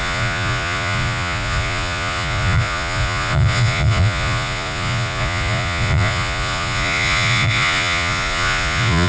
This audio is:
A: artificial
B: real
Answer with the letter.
A